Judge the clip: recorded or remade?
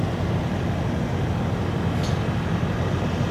recorded